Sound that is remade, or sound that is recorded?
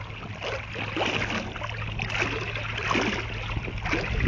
recorded